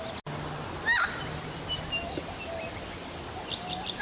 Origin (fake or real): real